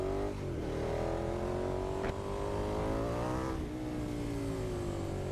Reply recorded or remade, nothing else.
recorded